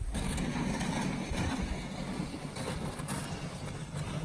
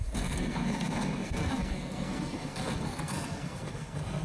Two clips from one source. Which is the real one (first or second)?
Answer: first